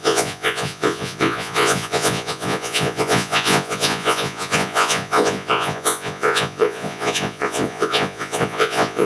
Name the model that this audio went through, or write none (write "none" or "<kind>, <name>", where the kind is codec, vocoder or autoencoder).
vocoder, Vocos